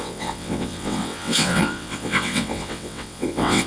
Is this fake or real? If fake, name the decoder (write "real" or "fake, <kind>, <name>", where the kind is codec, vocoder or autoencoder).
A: fake, vocoder, WaveNeXt